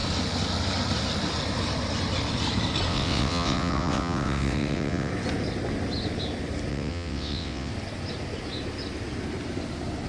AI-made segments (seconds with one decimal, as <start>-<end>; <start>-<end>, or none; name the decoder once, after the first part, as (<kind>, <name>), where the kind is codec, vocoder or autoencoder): 2.9-5.1 (vocoder, WaveNeXt); 6.7-7.7